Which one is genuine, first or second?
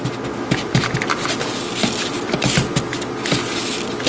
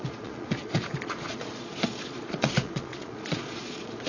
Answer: first